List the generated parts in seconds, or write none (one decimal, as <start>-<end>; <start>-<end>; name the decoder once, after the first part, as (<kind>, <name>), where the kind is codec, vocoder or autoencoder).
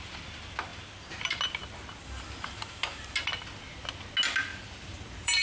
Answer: 4.5-5.4 (vocoder, BigVGAN v2)